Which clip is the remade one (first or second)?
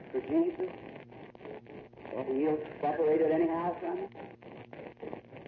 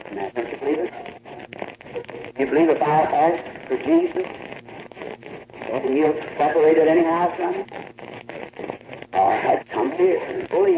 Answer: second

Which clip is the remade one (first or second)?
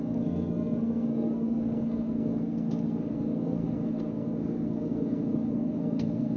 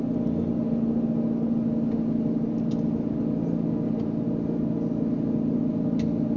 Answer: first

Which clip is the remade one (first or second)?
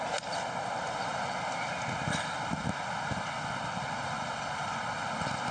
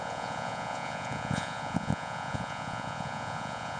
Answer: second